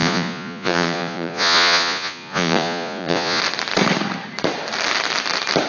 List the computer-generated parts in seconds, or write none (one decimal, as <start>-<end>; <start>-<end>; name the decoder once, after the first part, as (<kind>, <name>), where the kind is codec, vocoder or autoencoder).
0.0-3.4 (vocoder, Vocos)

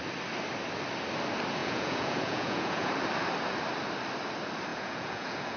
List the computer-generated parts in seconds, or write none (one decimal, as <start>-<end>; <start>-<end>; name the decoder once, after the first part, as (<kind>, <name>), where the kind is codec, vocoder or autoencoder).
1.6-2.9 (vocoder, Vocos); 4.7-5.6